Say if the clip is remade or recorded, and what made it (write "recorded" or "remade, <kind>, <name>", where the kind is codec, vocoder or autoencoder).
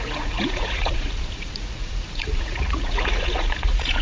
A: remade, vocoder, Vocos